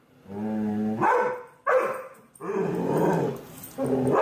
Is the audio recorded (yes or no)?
yes